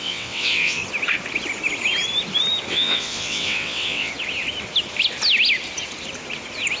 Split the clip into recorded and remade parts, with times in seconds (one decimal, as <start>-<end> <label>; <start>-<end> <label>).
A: 0.0-0.8 remade; 0.8-2.7 recorded; 2.7-4.1 remade; 4.1-6.8 recorded